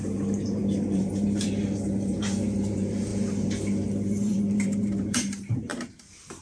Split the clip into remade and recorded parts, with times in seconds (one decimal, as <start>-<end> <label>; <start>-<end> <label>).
0.0-5.7 remade; 5.7-6.4 recorded